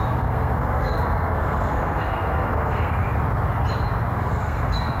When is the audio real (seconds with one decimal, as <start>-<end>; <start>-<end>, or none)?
3.0-4.2